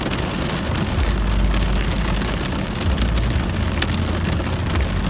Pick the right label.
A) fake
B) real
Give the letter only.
B